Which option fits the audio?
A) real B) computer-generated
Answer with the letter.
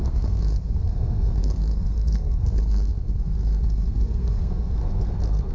B